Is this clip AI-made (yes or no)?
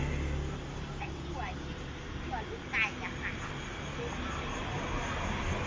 no